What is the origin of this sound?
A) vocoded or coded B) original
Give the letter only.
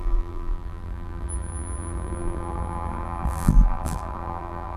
A